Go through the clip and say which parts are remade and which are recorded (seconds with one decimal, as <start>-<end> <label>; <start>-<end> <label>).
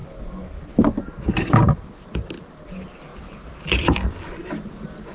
0.0-5.1 recorded